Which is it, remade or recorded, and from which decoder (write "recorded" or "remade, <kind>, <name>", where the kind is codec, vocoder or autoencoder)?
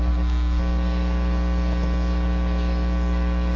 recorded